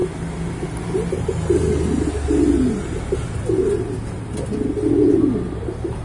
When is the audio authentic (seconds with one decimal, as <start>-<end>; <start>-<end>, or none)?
0.0-6.0